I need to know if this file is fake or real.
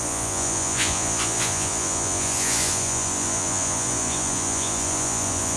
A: fake